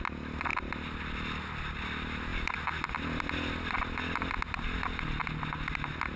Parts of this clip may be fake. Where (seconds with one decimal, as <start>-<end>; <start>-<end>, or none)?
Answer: none